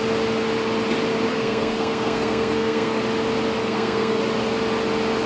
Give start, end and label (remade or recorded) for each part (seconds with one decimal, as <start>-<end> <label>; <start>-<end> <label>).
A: 0.0-1.3 recorded; 1.3-3.0 remade; 3.0-3.6 recorded; 3.6-4.2 remade; 4.2-5.3 recorded